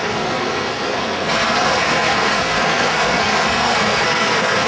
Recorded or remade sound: remade